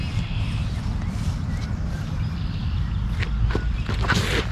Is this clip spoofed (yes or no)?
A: no